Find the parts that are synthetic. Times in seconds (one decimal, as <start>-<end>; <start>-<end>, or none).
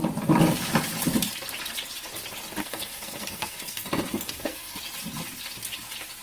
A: 2.6-4.8